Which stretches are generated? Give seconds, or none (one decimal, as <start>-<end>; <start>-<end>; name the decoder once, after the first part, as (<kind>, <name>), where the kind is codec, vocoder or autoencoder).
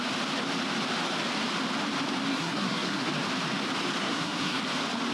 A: 2.3-3.1 (codec, SNAC); 4.0-4.6